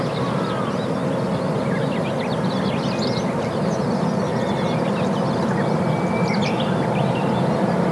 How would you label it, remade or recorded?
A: recorded